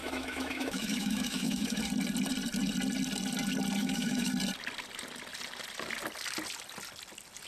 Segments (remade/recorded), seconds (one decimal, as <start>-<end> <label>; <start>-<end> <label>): 0.0-1.8 remade; 1.8-3.8 recorded; 3.8-4.3 remade; 4.3-7.5 recorded